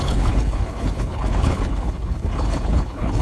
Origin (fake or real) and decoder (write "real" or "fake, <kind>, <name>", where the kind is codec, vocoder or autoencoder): fake, codec, HILCodec